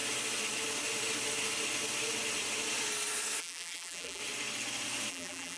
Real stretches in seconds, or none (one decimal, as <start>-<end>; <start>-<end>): 0.0-3.4; 4.2-5.1